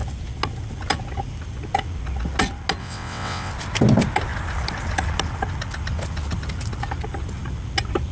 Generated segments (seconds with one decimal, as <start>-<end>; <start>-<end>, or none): 2.8-3.5